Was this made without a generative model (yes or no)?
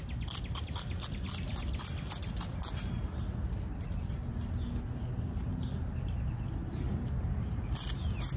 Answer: yes